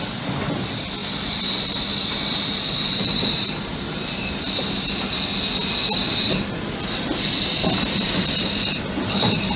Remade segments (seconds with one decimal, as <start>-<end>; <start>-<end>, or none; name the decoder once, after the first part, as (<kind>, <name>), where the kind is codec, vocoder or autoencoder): 1.0-5.0 (vocoder, BigVGAN v2)